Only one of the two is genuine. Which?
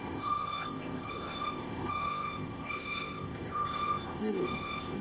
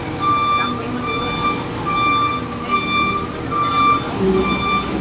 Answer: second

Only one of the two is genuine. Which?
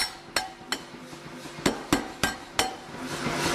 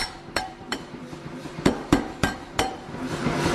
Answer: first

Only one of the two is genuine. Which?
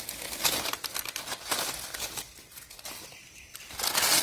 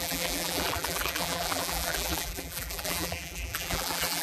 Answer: first